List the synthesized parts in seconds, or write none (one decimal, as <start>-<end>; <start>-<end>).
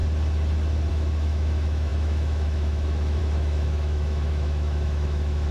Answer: 0.9-5.5